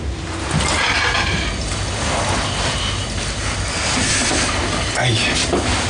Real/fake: real